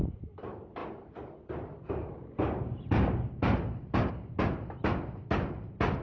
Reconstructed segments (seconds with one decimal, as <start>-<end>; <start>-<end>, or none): none